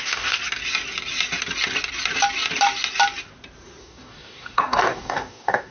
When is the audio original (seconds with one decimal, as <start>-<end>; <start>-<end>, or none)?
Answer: 0.4-3.8